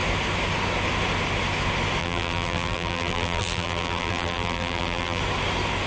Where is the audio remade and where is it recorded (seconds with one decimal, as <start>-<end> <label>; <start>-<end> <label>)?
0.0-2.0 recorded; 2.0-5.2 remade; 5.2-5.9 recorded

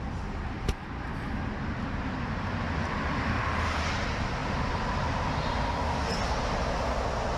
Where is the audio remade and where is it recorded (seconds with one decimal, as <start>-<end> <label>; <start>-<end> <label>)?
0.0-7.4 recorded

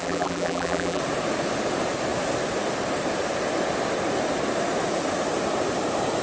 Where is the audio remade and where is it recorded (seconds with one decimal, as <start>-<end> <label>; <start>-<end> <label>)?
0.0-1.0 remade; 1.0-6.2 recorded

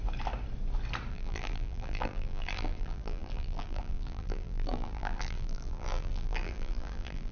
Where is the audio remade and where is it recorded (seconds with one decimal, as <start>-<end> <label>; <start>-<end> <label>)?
0.0-1.1 recorded; 1.1-7.3 remade

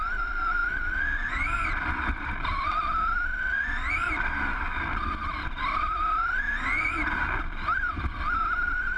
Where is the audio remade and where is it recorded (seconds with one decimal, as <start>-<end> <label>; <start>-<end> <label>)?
0.0-9.0 remade

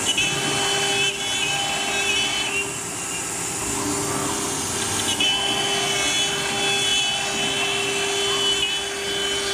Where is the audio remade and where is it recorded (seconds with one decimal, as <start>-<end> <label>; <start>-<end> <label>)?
0.0-9.5 recorded

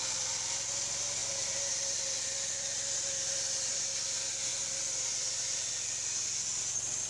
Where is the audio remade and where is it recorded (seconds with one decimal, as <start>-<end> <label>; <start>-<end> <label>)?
0.0-4.5 recorded; 4.5-5.7 remade; 5.7-7.1 recorded

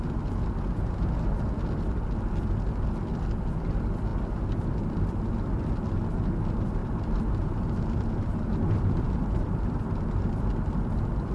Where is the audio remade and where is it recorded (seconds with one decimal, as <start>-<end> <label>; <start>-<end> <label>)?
0.0-6.8 recorded; 6.8-9.8 remade; 9.8-11.3 recorded